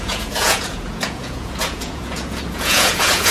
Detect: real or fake fake